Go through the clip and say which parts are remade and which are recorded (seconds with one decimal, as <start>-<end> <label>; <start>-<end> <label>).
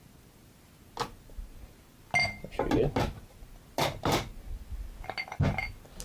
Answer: 0.0-6.0 recorded